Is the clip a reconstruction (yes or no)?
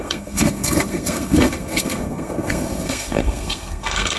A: yes